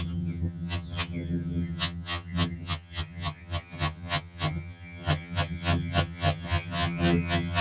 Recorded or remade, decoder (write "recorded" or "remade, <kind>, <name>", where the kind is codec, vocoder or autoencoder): remade, vocoder, HiFi-GAN